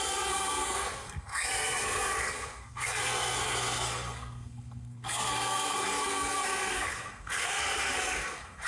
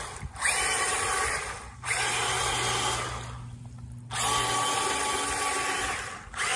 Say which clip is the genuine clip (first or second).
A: second